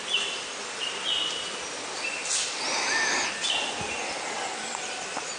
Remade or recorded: recorded